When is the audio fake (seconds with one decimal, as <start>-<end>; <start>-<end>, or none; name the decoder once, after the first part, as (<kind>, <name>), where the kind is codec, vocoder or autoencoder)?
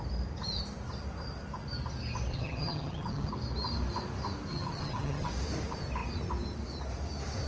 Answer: 2.3-3.3 (vocoder, HiFi-GAN); 4.5-5.3